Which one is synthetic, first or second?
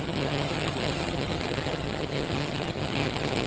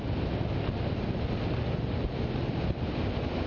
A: first